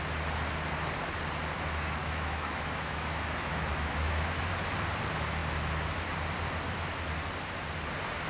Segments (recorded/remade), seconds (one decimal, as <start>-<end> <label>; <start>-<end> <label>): 0.0-2.0 recorded; 2.0-4.4 remade; 4.4-8.3 recorded